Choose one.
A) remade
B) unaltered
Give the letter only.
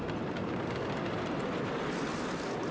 B